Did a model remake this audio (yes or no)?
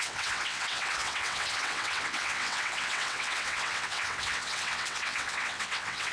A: yes